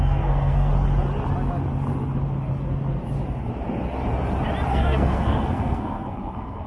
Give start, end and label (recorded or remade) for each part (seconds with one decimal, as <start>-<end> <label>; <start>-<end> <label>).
0.0-0.7 remade; 0.7-4.7 recorded; 4.7-6.7 remade